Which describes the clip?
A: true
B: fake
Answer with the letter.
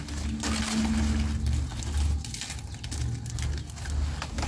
A